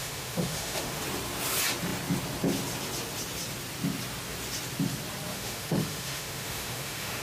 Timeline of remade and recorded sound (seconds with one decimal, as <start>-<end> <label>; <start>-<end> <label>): 0.0-1.0 remade; 1.0-5.3 recorded; 5.3-7.2 remade

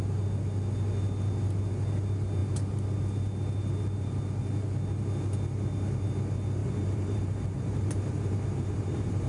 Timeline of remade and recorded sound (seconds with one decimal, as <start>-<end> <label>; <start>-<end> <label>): 0.0-6.6 recorded; 6.6-9.3 remade

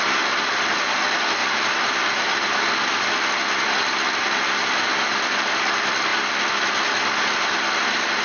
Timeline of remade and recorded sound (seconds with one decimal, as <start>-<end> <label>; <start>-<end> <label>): 0.0-1.4 recorded; 1.4-2.6 remade; 2.6-8.2 recorded

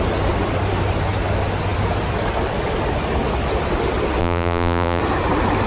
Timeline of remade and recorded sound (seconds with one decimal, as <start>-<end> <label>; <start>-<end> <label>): 0.0-4.2 recorded; 4.2-5.0 remade; 5.0-5.7 recorded

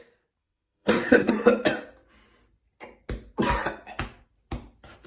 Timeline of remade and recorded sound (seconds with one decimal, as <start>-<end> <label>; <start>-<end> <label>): 0.0-0.4 recorded; 0.4-1.3 remade; 1.3-5.1 recorded

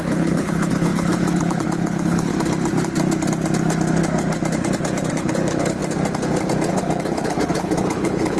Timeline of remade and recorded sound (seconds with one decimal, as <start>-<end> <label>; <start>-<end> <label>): 0.0-2.3 remade; 2.3-5.1 recorded; 5.1-5.8 remade; 5.8-6.7 recorded; 6.7-8.4 remade